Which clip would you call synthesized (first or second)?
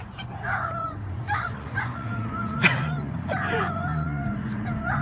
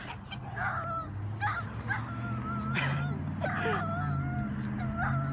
first